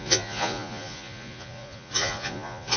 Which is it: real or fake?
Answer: fake